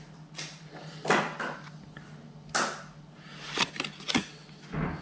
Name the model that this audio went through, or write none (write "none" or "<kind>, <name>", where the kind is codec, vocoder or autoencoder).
none